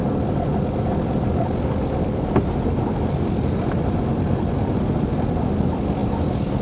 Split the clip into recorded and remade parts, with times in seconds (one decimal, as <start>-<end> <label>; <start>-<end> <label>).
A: 0.0-6.6 recorded